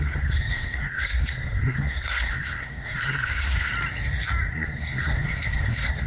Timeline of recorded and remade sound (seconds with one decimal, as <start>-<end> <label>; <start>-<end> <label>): 0.0-3.7 remade; 3.7-4.5 recorded; 4.5-6.1 remade